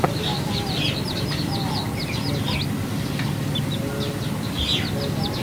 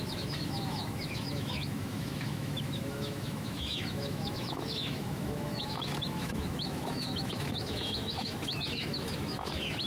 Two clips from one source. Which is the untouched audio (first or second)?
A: first